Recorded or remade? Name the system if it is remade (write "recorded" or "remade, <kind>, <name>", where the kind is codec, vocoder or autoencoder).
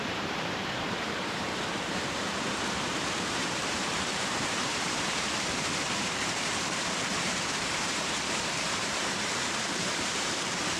remade, vocoder, BigVGAN v2